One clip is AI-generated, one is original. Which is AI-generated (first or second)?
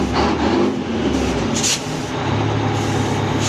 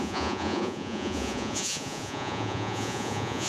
second